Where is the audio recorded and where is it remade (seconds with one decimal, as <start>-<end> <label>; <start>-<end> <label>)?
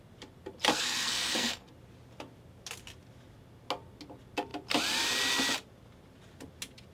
0.0-0.7 recorded; 0.7-1.7 remade; 1.7-6.9 recorded